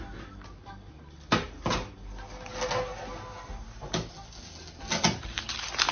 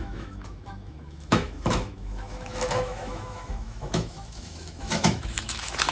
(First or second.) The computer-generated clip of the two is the second